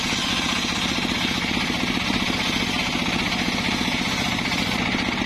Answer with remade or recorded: recorded